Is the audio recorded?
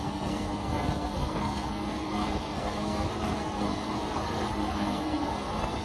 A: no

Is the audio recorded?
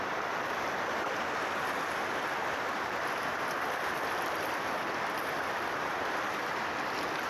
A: yes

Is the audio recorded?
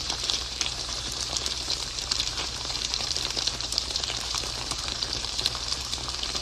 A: no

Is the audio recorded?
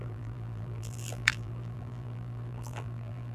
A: no